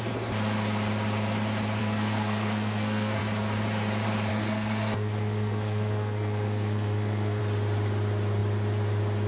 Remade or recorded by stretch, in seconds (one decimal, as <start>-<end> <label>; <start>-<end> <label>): 0.0-1.8 recorded; 1.8-3.2 remade; 3.2-4.3 recorded; 4.3-7.4 remade; 7.4-9.3 recorded